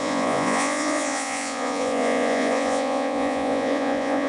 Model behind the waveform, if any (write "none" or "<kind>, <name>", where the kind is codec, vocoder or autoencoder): vocoder, Vocos